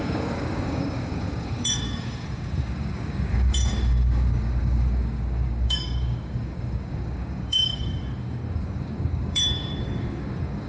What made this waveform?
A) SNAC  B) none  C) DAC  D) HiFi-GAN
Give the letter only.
C